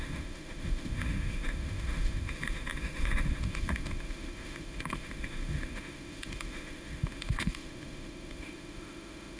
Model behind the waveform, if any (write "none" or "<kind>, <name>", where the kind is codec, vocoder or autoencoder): autoencoder, DAC-VAE